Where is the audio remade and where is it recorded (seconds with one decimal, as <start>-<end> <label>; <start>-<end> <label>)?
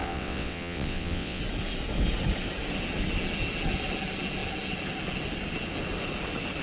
0.0-1.4 remade; 1.4-6.6 recorded